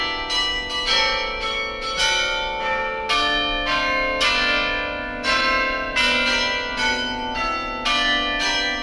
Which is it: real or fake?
real